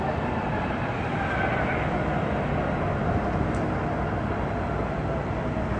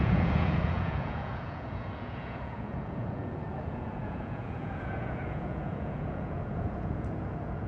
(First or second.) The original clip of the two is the first